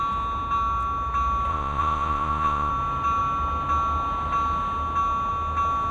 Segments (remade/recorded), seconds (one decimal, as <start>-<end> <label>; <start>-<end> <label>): 0.0-1.5 recorded; 1.5-2.7 remade; 2.7-5.9 recorded